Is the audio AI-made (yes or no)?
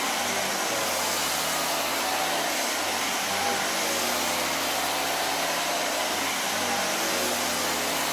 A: no